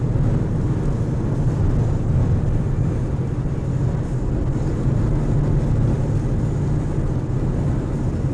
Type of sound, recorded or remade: recorded